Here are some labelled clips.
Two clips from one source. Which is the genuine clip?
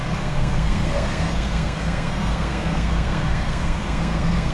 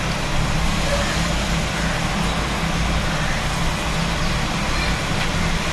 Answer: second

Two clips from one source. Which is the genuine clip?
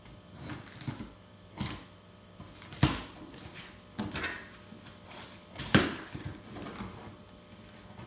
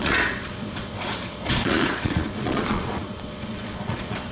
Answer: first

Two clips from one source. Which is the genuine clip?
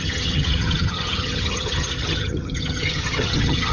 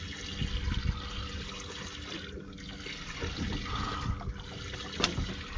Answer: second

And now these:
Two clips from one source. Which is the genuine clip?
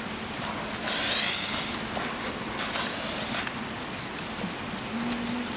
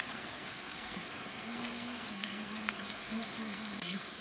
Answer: first